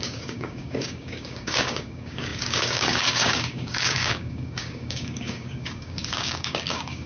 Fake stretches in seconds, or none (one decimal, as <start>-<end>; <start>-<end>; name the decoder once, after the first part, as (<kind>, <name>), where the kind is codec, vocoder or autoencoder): 0.0-7.1 (codec, DAC)